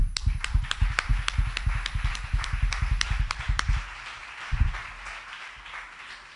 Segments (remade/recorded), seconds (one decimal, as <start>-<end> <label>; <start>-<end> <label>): 0.0-1.1 remade; 1.1-2.1 recorded; 2.1-6.4 remade